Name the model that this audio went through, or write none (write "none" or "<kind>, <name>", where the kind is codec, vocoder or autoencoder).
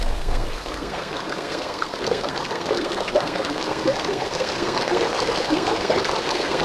codec, SNAC